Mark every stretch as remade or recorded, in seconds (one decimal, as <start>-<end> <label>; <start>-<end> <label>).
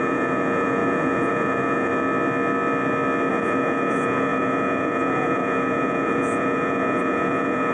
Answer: 0.0-1.9 remade; 1.9-3.3 recorded; 3.3-7.7 remade